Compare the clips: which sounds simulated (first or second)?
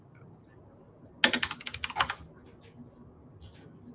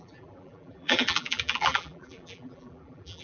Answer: second